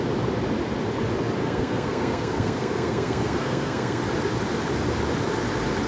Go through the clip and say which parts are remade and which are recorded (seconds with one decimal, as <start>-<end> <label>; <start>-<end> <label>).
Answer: 0.0-1.4 recorded; 1.4-4.0 remade; 4.0-5.9 recorded